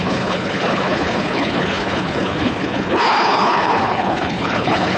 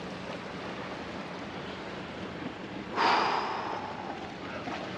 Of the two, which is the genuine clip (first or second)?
second